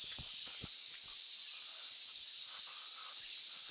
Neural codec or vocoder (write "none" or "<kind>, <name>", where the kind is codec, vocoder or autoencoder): none